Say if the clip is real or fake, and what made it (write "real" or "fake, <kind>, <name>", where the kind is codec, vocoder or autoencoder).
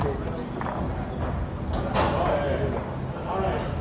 real